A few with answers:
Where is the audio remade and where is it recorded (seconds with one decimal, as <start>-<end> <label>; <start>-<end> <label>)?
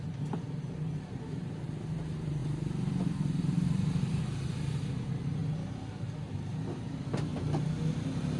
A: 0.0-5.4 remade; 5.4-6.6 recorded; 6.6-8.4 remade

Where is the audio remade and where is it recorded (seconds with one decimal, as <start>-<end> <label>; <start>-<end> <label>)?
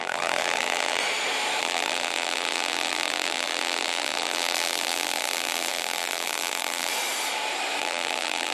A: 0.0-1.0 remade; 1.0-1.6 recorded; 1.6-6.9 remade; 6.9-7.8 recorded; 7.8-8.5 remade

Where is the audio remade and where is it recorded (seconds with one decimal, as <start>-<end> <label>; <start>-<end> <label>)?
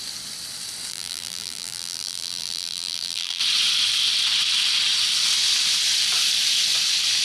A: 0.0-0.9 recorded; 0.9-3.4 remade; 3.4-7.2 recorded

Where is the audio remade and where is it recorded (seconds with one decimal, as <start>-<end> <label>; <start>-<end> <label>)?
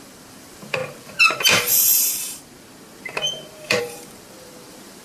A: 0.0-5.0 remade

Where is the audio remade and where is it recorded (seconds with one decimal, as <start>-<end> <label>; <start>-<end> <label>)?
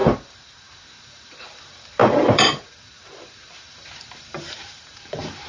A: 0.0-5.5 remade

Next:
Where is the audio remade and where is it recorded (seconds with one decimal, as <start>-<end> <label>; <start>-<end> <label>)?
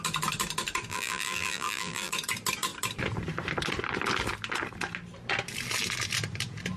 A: 0.0-0.9 recorded; 0.9-2.1 remade; 2.1-6.8 recorded